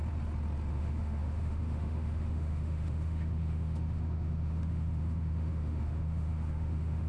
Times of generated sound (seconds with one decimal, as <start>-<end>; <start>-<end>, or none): 0.7-7.1